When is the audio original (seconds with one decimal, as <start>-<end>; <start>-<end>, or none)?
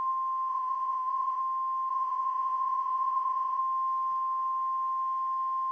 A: 0.0-0.5; 1.4-1.9; 3.6-5.7